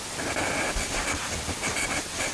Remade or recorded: recorded